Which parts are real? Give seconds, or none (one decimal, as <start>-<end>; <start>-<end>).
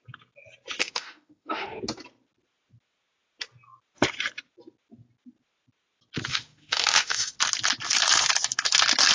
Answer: 0.0-0.8; 1.8-6.3; 7.4-9.1